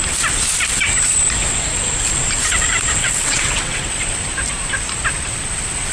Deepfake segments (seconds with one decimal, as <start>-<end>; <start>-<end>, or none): 3.0-3.9